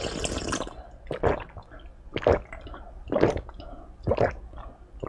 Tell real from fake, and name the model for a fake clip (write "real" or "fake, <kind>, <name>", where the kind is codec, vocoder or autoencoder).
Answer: real